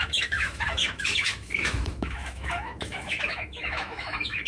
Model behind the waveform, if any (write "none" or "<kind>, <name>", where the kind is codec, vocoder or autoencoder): autoencoder, DAC-VAE